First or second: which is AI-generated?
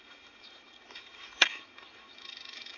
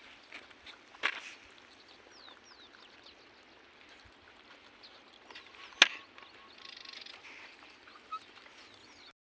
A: first